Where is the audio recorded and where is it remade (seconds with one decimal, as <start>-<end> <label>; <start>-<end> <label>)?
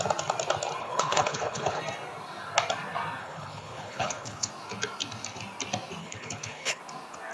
0.0-0.8 recorded; 0.8-1.8 remade; 1.8-3.2 recorded; 3.2-4.5 remade; 4.5-6.0 recorded; 6.0-6.8 remade; 6.8-7.3 recorded